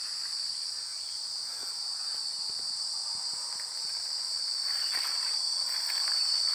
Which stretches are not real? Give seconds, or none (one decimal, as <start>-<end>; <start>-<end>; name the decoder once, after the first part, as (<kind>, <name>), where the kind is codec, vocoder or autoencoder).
0.9-2.0 (vocoder, BigVGAN v2); 4.3-5.6